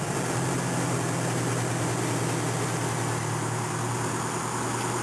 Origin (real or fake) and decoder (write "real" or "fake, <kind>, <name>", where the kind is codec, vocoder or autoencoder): real